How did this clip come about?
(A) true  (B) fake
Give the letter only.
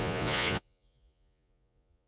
B